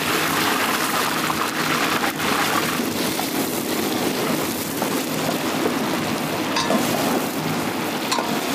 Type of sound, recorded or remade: recorded